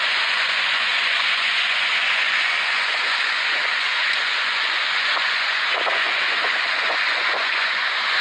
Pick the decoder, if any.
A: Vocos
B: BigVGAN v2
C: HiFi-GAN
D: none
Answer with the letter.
A